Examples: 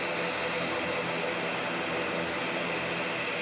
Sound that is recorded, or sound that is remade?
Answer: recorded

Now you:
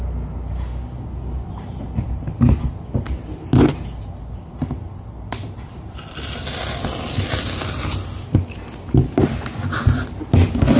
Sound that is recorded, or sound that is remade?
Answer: recorded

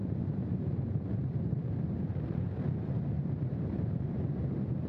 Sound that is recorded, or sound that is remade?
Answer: remade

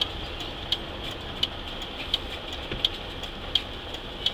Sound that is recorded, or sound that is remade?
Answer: recorded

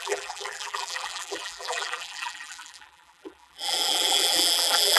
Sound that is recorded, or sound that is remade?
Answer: remade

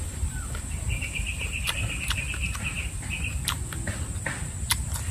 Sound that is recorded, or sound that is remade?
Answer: remade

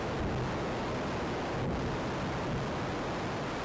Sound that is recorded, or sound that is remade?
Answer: recorded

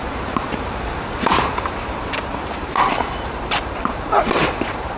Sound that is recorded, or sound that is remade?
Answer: remade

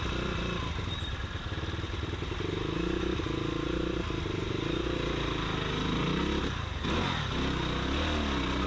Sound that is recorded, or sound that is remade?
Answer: recorded